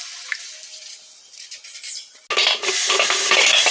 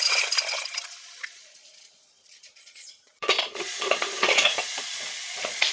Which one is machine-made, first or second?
second